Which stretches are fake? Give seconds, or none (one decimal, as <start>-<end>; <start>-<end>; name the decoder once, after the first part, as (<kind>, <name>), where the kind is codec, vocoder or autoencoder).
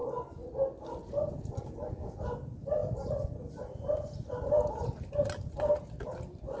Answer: none